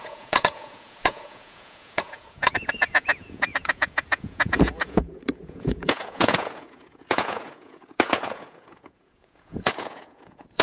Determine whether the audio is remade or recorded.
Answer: remade